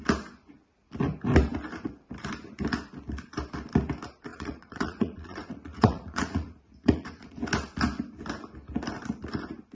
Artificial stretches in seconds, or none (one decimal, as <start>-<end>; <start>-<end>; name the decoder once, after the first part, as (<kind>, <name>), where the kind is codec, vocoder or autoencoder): 4.3-7.4 (vocoder, Vocos)